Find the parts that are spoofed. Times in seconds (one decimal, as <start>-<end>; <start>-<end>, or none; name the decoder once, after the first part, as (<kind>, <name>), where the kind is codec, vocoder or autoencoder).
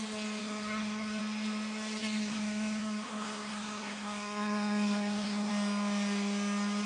0.4-1.2 (codec, SNAC); 2.0-5.5